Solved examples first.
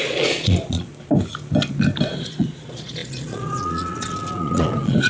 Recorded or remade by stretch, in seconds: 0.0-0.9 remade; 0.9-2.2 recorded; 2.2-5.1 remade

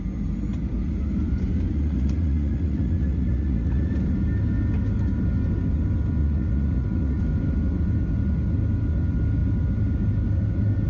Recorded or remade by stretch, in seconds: 0.0-1.7 recorded; 1.7-3.9 remade; 3.9-6.2 recorded; 6.2-7.2 remade; 7.2-10.9 recorded

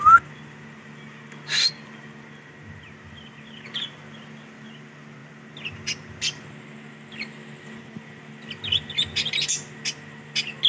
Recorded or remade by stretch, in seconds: 0.0-10.7 recorded

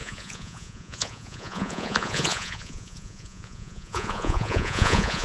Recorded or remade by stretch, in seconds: 0.0-5.2 remade

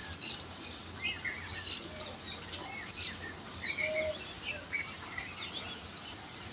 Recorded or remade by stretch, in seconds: 0.0-6.5 recorded

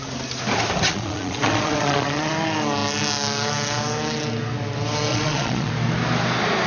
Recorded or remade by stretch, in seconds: 0.0-0.9 recorded; 0.9-2.3 remade; 2.3-5.1 recorded; 5.1-5.7 remade; 5.7-6.7 recorded

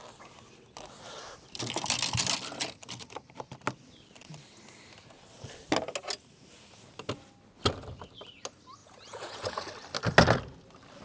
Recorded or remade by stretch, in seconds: 0.0-8.8 recorded; 8.8-9.7 remade; 9.7-11.0 recorded